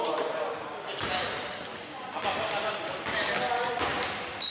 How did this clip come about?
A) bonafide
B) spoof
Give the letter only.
A